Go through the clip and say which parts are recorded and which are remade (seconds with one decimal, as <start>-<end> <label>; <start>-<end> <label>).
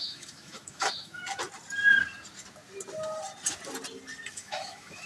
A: 0.0-1.2 remade; 1.2-4.3 recorded; 4.3-5.1 remade